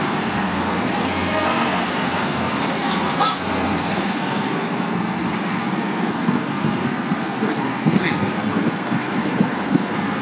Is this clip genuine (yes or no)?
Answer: no